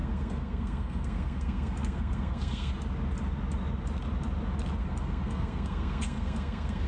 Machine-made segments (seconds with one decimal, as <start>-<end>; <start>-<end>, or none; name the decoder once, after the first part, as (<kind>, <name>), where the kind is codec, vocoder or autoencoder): 0.0-2.7 (codec, SNAC); 4.8-6.9